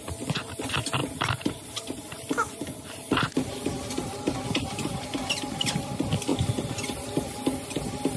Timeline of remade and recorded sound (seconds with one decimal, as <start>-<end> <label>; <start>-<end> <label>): 0.0-8.2 recorded